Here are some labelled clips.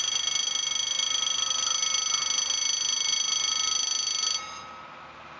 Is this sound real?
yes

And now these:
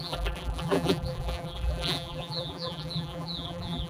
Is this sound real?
no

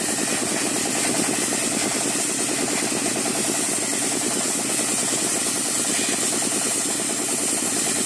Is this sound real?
yes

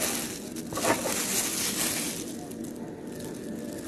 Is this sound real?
yes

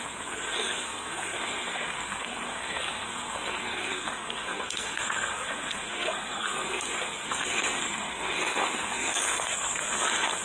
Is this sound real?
no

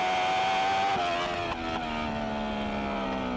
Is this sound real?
yes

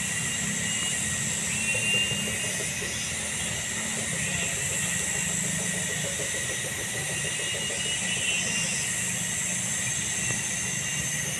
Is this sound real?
yes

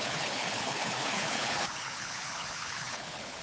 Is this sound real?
no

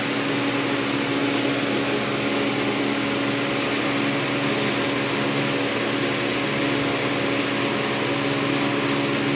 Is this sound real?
yes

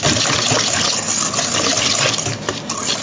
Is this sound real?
yes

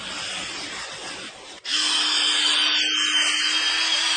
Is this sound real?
yes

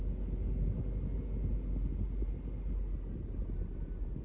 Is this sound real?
yes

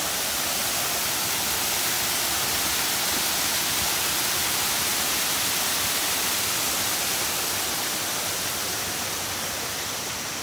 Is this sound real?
yes